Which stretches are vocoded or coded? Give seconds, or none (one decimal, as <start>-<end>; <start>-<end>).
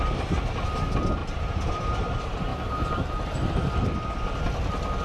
1.2-2.1; 2.5-3.0